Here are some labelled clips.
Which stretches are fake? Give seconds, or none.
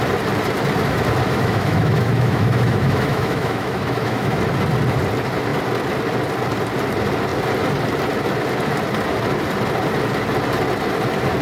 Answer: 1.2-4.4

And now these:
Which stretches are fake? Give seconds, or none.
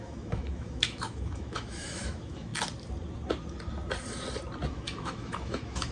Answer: 0.0-2.5; 4.7-5.9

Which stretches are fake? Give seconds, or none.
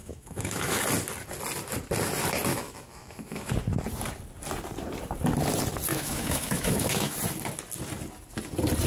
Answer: 0.0-0.8; 2.5-3.5; 5.9-7.2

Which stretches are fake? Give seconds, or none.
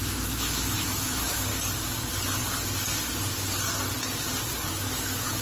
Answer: 0.0-1.5; 4.7-5.4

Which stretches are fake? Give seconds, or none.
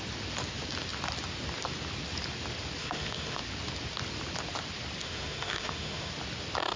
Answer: 2.8-3.4; 5.0-6.1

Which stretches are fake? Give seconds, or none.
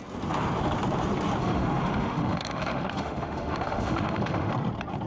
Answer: 1.4-4.5